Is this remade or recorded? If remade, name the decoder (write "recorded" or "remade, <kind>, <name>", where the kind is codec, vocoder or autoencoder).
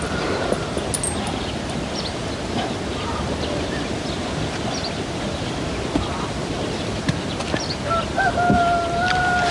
recorded